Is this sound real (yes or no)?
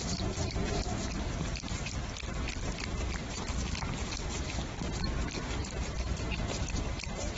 no